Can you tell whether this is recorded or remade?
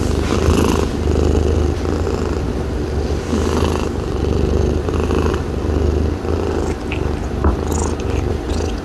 recorded